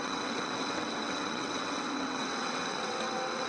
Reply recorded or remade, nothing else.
remade